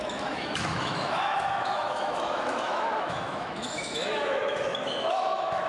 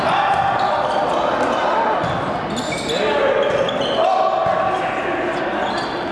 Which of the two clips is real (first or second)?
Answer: second